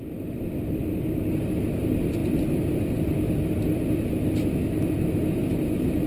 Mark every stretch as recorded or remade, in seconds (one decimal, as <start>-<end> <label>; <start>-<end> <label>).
0.0-6.1 recorded